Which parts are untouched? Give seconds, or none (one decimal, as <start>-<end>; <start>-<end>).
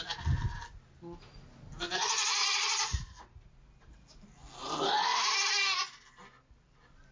0.0-2.4; 3.5-7.1